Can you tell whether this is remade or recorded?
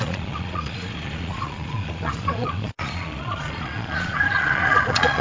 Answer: remade